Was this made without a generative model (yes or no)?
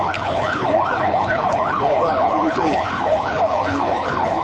no